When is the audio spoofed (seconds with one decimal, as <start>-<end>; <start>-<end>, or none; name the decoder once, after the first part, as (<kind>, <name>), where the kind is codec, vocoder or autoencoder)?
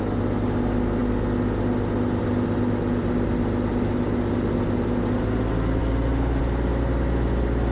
none